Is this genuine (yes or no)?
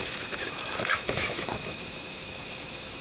no